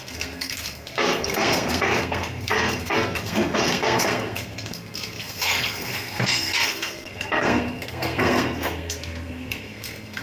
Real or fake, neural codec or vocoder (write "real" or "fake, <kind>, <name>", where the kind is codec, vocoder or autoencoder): fake, codec, SNAC